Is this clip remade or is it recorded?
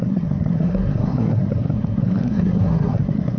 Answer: remade